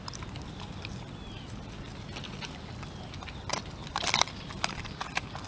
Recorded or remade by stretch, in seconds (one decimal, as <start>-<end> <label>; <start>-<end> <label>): 0.0-5.5 recorded